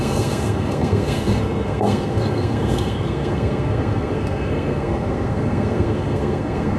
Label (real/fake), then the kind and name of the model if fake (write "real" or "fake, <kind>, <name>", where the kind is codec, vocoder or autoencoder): fake, codec, SNAC